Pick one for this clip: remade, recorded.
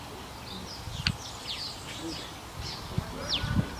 recorded